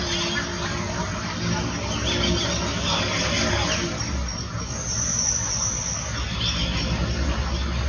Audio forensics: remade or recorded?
recorded